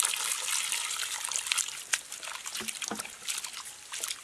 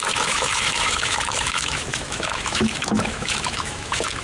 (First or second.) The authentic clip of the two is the first